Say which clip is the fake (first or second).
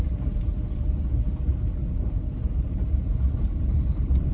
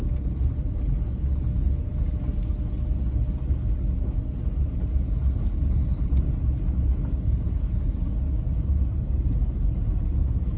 first